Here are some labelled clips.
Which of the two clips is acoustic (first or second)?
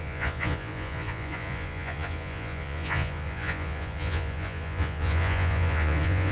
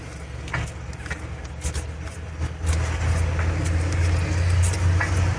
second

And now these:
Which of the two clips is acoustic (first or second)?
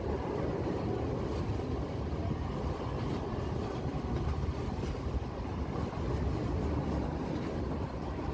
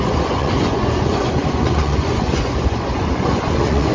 first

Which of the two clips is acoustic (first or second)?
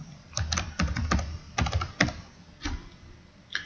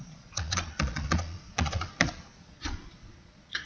first